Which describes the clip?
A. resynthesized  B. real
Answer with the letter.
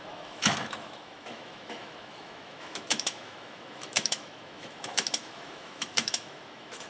A